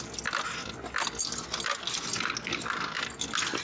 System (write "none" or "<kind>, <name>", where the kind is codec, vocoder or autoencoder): none